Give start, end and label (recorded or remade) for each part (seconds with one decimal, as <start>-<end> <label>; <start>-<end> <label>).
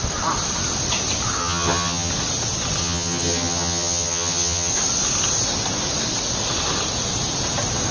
0.0-1.4 recorded; 1.4-2.1 remade; 2.1-2.8 recorded; 2.8-4.7 remade; 4.7-7.9 recorded